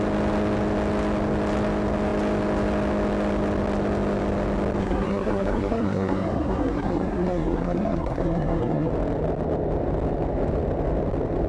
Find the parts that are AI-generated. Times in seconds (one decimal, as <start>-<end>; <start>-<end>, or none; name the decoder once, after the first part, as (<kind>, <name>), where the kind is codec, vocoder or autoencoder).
4.8-8.9 (codec, SNAC)

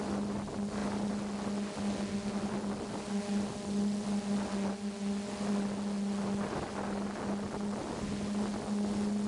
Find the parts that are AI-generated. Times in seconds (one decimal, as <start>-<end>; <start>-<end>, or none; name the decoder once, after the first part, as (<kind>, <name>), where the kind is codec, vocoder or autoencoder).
none

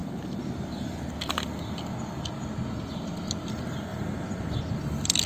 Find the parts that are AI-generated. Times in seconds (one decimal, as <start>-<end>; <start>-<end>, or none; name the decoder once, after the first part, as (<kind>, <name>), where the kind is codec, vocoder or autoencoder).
0.0-1.6 (vocoder, BigVGAN v2); 3.9-4.6